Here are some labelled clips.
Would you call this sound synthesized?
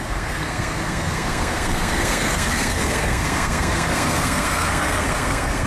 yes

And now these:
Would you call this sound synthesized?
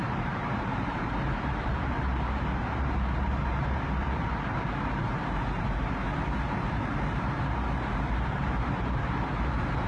yes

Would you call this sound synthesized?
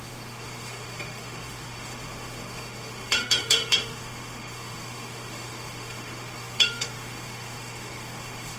yes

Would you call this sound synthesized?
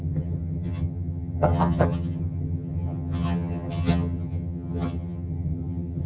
yes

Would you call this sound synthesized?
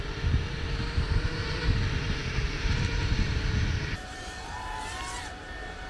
yes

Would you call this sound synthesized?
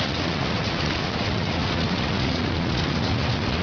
yes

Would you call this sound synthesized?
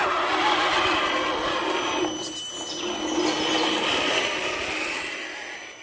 no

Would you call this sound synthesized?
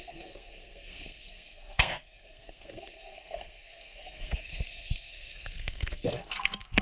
yes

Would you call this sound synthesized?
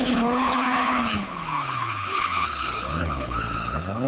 yes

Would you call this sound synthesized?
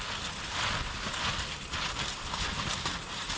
no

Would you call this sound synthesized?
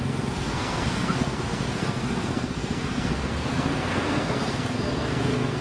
yes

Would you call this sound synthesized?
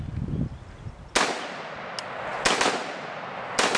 no